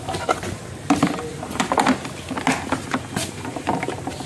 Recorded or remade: recorded